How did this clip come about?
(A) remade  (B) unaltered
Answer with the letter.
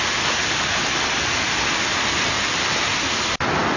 B